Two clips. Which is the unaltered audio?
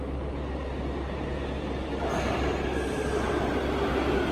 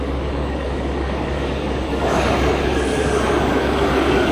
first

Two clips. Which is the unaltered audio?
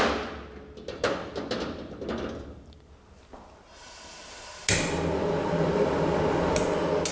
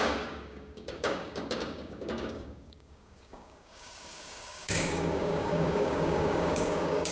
first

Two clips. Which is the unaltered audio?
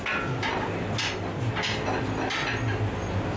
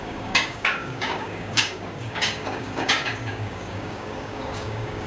first